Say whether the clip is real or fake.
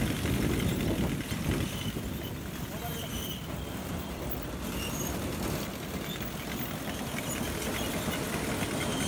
real